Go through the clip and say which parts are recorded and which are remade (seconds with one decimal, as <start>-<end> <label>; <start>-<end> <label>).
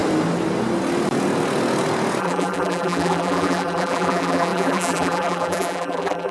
0.0-2.2 recorded; 2.2-6.3 remade